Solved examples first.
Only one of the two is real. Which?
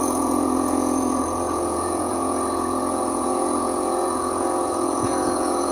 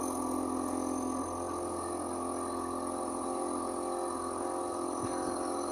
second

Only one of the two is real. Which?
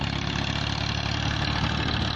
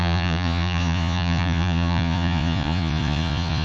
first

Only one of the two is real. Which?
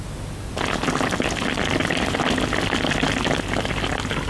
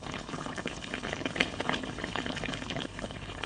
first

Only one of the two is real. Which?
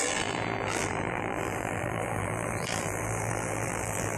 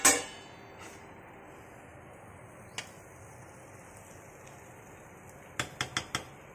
second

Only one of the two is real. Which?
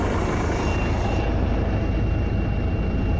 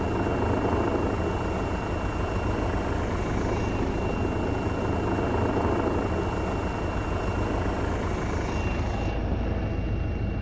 second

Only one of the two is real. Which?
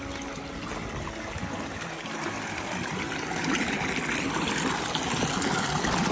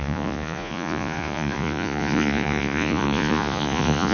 first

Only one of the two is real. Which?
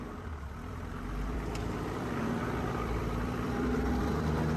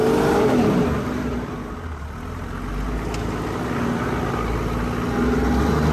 second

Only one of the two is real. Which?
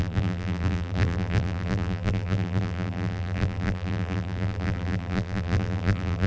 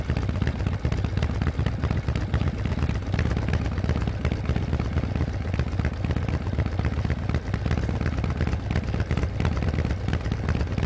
second